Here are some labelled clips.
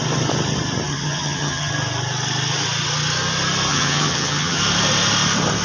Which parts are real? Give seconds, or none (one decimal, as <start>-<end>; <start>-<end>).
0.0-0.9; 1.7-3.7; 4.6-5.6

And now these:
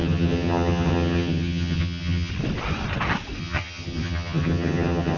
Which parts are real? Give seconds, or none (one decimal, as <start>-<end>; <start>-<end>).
2.3-3.4

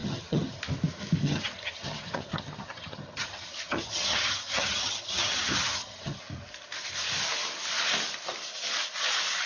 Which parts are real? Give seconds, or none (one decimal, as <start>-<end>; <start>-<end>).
0.6-1.2; 6.2-9.5